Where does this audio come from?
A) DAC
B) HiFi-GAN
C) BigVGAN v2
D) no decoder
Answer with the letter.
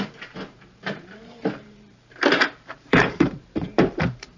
C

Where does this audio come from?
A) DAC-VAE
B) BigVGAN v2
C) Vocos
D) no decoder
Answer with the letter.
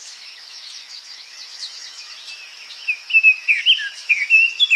A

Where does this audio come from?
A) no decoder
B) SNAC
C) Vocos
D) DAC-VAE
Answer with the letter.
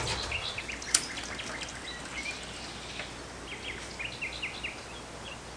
A